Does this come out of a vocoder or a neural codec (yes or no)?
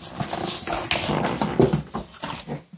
no